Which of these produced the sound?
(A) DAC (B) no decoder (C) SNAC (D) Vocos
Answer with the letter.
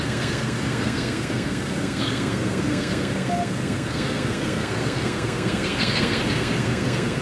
C